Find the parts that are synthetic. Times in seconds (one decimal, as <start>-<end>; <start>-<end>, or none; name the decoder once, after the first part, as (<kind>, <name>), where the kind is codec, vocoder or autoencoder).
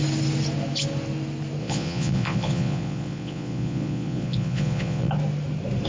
1.6-5.1 (vocoder, Vocos)